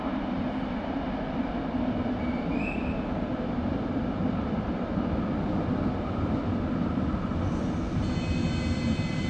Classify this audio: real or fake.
real